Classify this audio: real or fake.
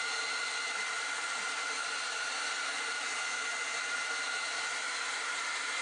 real